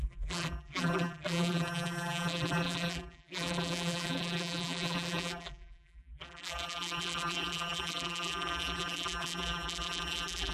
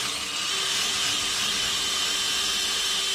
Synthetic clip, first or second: first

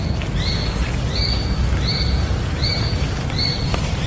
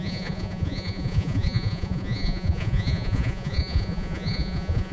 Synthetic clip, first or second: second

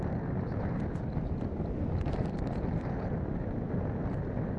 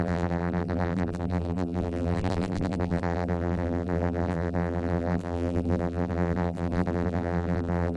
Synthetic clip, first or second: second